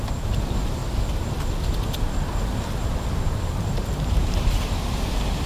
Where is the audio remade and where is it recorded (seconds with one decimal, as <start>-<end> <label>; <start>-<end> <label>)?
0.0-0.8 remade; 0.8-4.1 recorded; 4.1-5.5 remade